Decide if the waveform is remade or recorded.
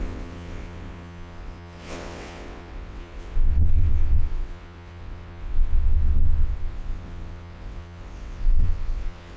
remade